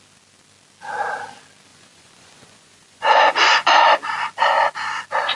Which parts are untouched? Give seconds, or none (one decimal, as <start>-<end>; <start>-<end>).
0.0-1.7; 3.8-5.4

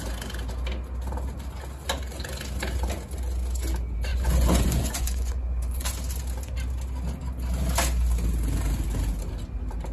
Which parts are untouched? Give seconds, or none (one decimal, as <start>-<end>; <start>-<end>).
0.0-4.1; 5.9-9.9

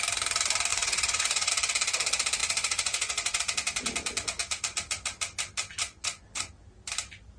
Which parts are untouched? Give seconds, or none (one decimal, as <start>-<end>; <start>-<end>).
0.0-0.7; 1.5-2.4; 3.4-5.8; 6.5-7.4

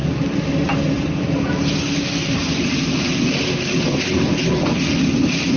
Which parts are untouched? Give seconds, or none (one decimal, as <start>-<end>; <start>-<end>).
0.0-5.6

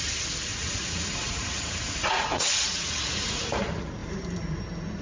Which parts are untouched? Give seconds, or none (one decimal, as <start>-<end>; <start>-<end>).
0.0-0.6; 3.6-4.0; 4.6-5.0

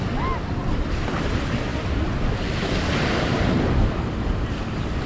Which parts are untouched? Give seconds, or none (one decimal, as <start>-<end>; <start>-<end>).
0.0-5.1

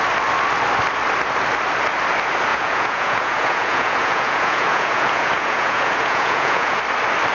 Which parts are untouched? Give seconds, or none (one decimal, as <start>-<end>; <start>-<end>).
0.0-2.5; 6.8-7.3